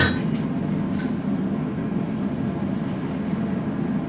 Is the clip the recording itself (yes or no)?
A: yes